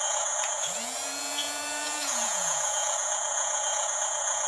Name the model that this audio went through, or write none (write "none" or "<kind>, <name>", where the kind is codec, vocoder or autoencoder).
vocoder, Vocos